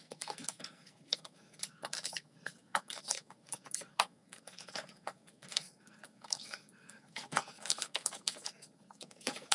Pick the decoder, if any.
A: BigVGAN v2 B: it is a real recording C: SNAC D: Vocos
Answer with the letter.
C